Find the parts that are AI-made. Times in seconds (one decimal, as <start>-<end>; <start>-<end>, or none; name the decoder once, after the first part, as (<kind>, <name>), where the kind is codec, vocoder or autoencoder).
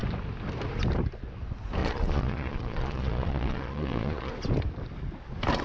1.8-4.3 (vocoder, Vocos)